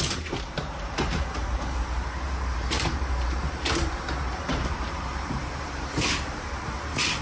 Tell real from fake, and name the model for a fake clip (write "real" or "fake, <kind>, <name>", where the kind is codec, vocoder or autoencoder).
fake, vocoder, BigVGAN v2